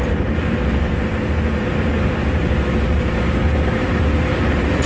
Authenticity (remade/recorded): remade